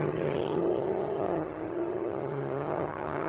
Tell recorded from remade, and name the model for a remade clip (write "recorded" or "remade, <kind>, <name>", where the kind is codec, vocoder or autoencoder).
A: remade, vocoder, HiFi-GAN